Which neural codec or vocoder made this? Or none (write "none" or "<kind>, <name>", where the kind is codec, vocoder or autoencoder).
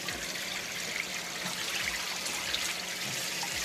none